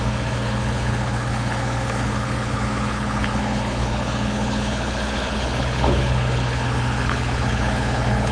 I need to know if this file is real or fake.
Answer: fake